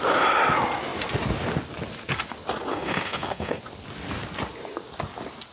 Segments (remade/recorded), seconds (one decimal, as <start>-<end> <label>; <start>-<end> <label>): 0.0-2.7 recorded; 2.7-3.6 remade; 3.6-5.5 recorded